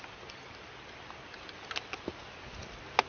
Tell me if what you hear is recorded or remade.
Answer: recorded